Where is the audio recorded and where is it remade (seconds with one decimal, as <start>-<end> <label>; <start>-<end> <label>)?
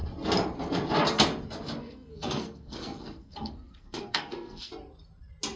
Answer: 0.0-1.8 recorded; 1.8-4.7 remade; 4.7-5.6 recorded